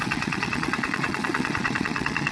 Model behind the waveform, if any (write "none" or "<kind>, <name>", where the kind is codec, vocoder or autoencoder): vocoder, Vocos